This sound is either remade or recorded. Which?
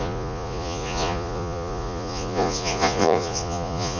remade